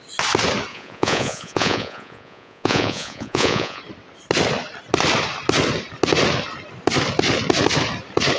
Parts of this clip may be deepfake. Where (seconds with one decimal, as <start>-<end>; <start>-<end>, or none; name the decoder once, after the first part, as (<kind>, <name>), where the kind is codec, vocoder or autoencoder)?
0.7-3.8 (vocoder, Vocos)